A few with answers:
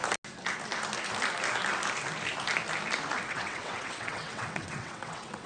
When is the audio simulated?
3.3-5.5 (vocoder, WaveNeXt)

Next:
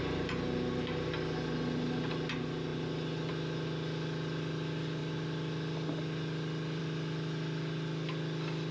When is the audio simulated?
none

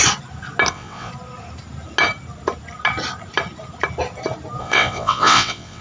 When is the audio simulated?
0.7-1.1 (vocoder, WaveNeXt); 4.6-5.8

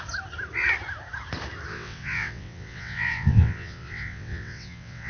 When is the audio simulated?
1.7-5.1 (vocoder, WaveNeXt)

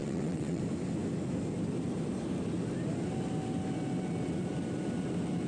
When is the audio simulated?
0.0-0.6 (vocoder, WaveNeXt)

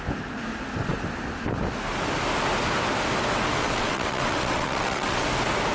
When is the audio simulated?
3.6-5.3 (vocoder, WaveNeXt)

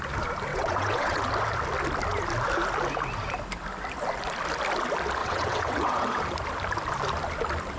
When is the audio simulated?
0.5-1.2 (vocoder, WaveNeXt); 5.2-6.2

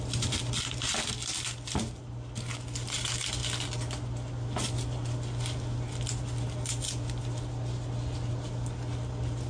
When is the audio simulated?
none